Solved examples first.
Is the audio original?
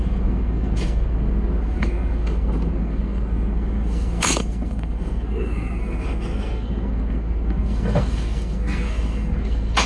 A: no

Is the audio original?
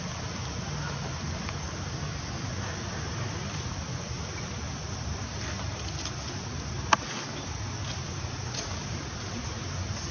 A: yes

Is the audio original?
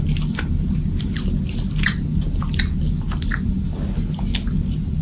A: yes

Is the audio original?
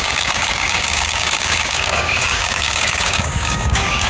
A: no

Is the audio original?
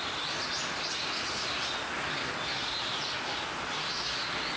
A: yes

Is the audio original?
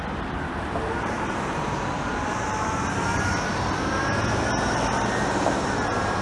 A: no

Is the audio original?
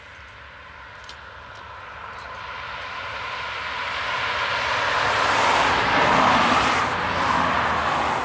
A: yes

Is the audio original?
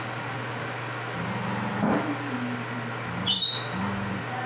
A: yes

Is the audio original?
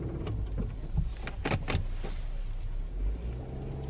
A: yes